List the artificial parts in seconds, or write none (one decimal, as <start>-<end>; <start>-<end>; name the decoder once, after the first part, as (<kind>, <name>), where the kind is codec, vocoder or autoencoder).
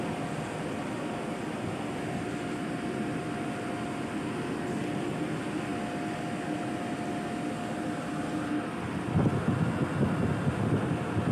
none